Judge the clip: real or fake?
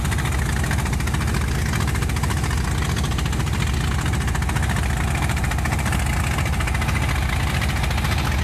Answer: real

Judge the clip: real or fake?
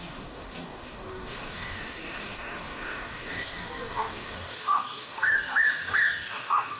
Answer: fake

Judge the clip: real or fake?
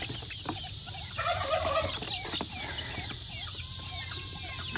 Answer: real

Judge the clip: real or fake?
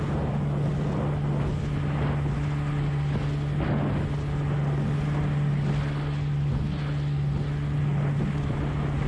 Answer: real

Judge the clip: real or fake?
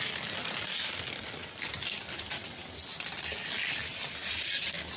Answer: fake